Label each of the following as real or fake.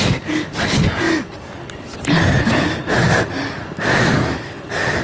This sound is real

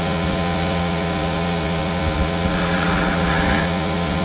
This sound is fake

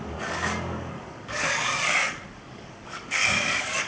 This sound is fake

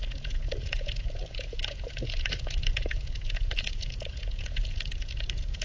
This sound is fake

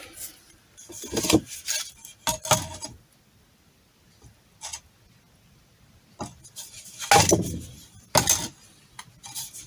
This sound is real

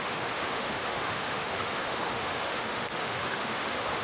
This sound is fake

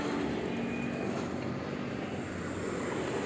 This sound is real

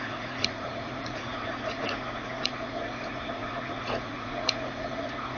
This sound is fake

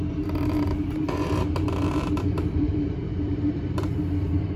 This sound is fake